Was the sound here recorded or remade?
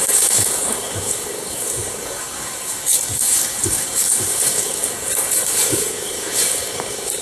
remade